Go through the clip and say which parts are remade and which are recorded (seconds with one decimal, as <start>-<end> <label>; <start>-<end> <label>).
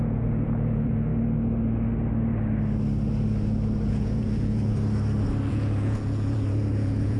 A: 0.0-1.1 remade; 1.1-3.8 recorded; 3.8-4.7 remade; 4.7-5.5 recorded; 5.5-7.2 remade